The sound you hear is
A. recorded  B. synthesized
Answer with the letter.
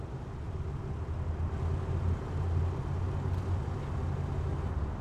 A